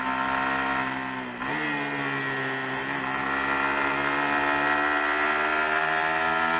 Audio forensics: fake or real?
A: real